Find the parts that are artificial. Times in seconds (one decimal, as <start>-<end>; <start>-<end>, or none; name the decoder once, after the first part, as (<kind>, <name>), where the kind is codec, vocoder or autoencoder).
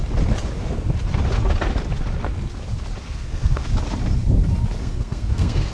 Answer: 3.0-3.7 (codec, SNAC); 4.8-5.7